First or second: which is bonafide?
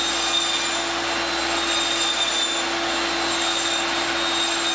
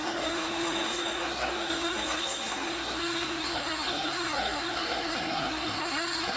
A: first